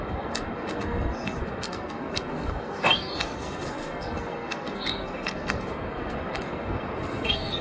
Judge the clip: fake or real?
fake